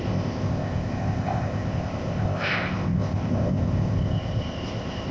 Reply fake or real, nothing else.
fake